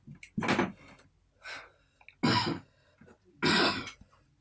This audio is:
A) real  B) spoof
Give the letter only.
A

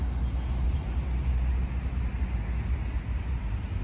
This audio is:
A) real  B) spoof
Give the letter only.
A